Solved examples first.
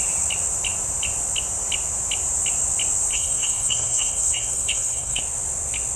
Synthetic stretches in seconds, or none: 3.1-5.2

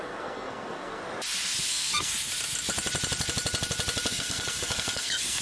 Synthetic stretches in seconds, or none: 0.0-1.0; 1.7-2.1; 4.1-5.4

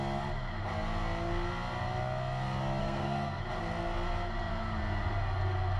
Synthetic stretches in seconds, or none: 2.8-3.4

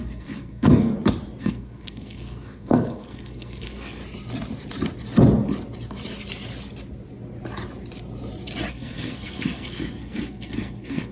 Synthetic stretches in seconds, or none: 0.0-0.9; 1.4-4.0; 8.7-11.1